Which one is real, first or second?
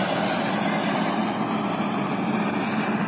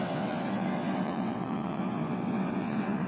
first